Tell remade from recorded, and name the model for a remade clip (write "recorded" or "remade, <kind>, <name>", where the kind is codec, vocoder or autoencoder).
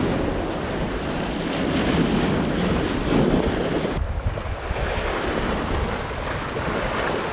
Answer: recorded